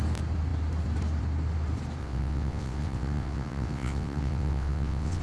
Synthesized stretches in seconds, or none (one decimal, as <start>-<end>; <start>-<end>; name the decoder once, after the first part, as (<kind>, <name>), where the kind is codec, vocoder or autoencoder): 2.0-5.2 (vocoder, WaveNeXt)